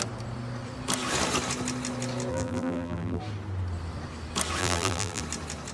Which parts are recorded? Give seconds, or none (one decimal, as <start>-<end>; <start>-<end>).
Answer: 0.0-2.3; 3.2-4.6; 5.2-5.7